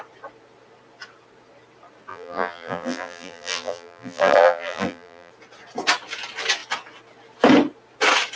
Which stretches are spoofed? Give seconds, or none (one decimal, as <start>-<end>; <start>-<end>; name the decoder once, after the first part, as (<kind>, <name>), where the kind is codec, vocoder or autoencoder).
2.1-5.3 (vocoder, BigVGAN v2)